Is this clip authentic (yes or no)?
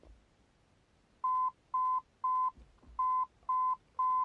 yes